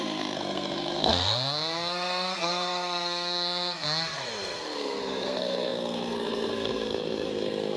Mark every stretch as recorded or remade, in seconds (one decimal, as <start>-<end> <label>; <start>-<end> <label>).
0.0-7.8 remade